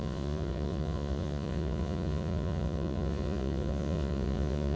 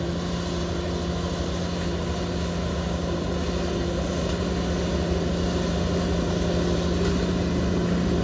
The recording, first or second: second